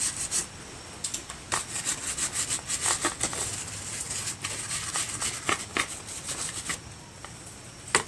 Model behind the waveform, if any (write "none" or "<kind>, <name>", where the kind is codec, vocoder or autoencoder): none